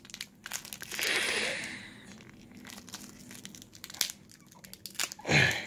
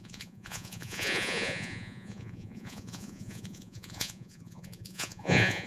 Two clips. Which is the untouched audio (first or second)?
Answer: first